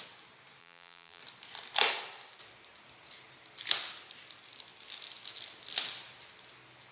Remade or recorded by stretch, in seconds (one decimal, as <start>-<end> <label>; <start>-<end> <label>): 0.0-0.6 recorded; 0.6-1.2 remade; 1.2-6.9 recorded